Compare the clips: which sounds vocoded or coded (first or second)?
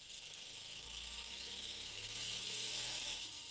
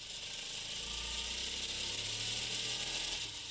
first